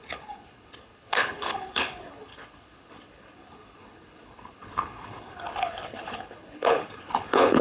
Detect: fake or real fake